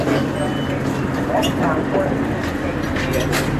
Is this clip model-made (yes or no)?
no